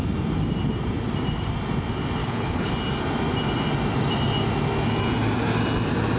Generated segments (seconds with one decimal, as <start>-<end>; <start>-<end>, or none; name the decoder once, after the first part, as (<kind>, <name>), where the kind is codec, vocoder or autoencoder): 2.2-2.7 (codec, HILCodec)